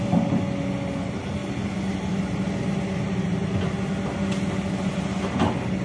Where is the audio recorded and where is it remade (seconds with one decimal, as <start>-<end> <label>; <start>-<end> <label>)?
0.0-5.8 recorded